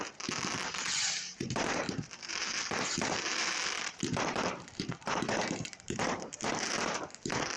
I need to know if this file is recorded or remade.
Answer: remade